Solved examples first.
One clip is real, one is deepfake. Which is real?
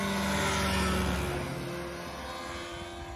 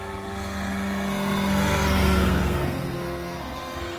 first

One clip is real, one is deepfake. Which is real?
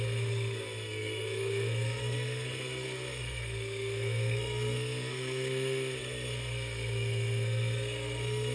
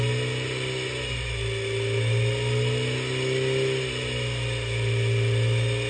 second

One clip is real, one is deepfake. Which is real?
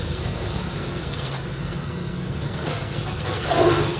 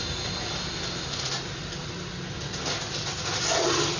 second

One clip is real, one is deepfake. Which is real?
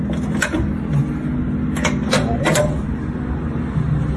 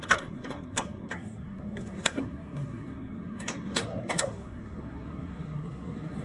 first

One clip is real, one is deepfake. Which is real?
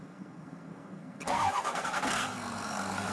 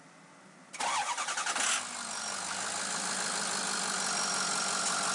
second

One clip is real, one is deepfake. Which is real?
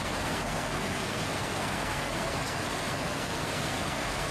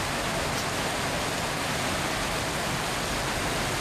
second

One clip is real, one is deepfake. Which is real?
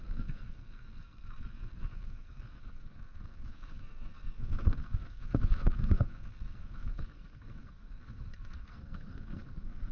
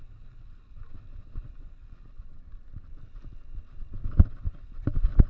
second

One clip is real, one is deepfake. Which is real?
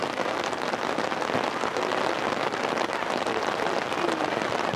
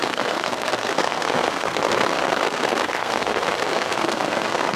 first